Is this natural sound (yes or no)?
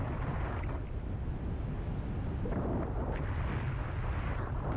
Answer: yes